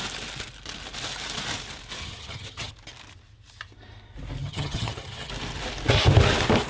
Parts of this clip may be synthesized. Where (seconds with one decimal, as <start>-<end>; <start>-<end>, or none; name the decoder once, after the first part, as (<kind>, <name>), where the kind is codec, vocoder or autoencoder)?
2.0-2.7 (vocoder, HiFi-GAN); 4.4-5.3